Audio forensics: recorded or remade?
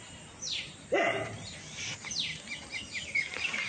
recorded